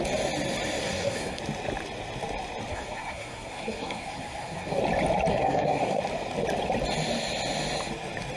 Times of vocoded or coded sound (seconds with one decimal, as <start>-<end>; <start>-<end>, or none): 0.8-1.4; 2.7-4.8; 5.3-6.0